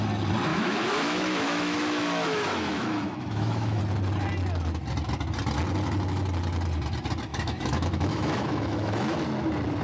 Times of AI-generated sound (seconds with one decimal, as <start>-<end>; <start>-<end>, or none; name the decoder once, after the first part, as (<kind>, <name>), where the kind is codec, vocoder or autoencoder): 0.5-3.8 (autoencoder, DAC-VAE); 7.3-9.2